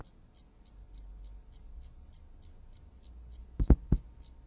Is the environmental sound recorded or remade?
recorded